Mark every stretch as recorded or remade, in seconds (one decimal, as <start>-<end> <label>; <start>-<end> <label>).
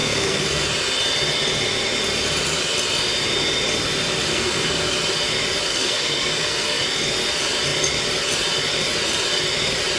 0.0-0.6 remade; 0.6-4.3 recorded; 4.3-4.9 remade; 4.9-5.7 recorded; 5.7-6.8 remade; 6.8-10.0 recorded